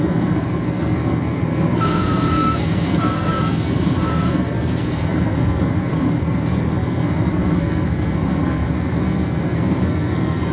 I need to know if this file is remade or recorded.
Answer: remade